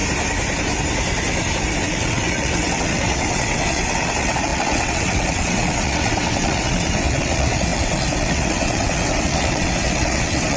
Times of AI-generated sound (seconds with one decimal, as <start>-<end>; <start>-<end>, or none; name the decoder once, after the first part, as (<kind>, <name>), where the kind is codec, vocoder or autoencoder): 1.8-10.6 (vocoder, WaveNeXt)